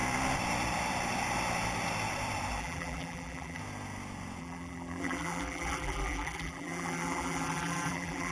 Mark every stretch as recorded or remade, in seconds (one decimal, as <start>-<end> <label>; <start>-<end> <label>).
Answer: 0.0-2.6 recorded; 2.6-3.6 remade; 3.6-4.4 recorded; 4.4-8.3 remade